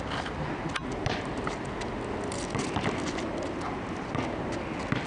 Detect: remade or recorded recorded